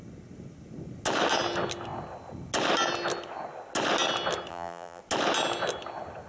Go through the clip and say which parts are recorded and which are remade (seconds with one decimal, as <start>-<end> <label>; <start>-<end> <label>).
0.0-4.5 recorded; 4.5-5.0 remade; 5.0-6.3 recorded